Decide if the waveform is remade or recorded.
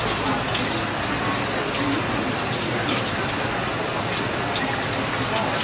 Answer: recorded